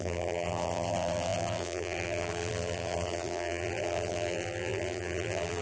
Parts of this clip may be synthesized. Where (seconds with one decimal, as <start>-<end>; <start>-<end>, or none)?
0.0-5.6